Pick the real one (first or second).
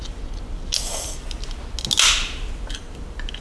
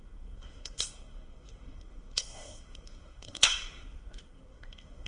first